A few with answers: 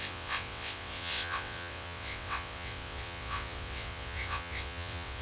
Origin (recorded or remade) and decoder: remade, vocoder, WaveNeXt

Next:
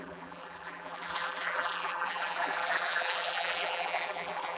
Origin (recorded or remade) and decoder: remade, vocoder, BigVGAN v2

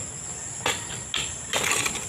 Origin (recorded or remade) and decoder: recorded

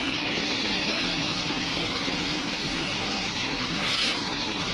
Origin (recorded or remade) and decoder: remade, codec, SNAC